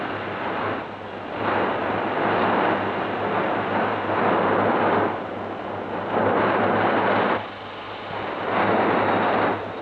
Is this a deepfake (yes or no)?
no